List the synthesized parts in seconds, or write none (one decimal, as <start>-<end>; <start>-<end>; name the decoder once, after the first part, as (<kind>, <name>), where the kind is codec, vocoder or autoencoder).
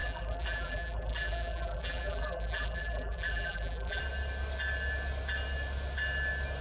0.0-4.0 (vocoder, BigVGAN v2)